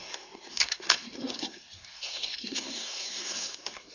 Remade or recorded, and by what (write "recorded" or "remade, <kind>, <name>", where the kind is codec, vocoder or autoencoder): remade, codec, SNAC